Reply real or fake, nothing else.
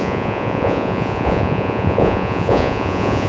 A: fake